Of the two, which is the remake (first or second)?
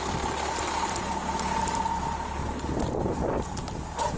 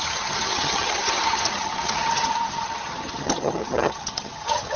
second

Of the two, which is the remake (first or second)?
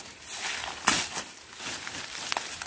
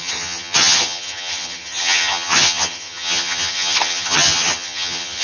second